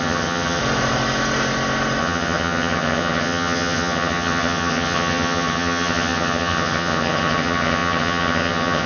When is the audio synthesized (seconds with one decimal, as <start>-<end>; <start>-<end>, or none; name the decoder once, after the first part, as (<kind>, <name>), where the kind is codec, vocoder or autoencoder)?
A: 0.0-0.6 (vocoder, HiFi-GAN); 2.0-8.9